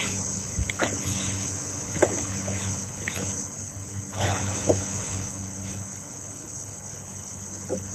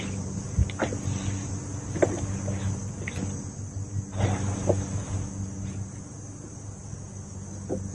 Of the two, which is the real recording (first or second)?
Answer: second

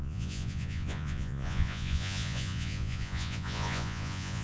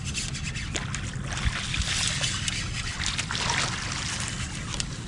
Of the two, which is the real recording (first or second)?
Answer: second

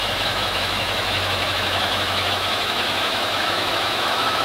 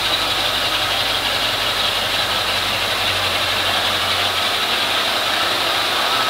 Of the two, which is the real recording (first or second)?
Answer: second